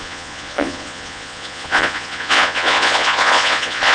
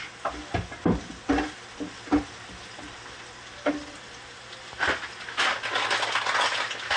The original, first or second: second